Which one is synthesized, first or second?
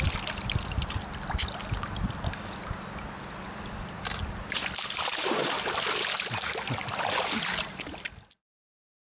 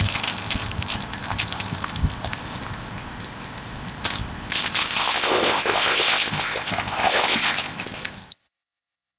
second